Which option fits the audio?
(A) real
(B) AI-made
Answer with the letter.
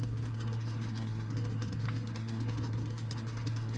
B